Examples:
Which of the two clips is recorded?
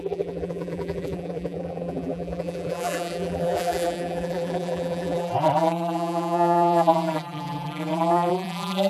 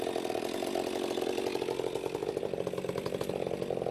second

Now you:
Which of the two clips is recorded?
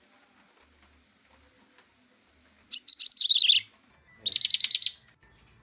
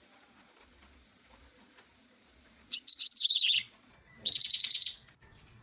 first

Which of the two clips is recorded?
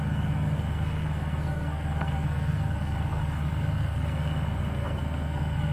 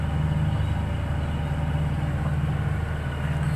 second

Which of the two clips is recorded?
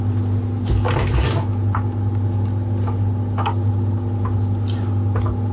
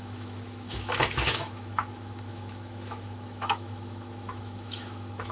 first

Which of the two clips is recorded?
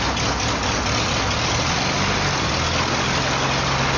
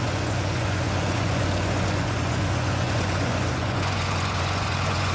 first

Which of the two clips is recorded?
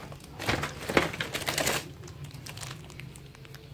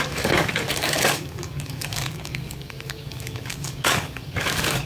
first